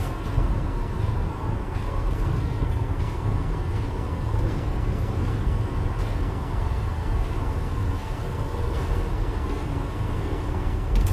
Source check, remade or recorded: remade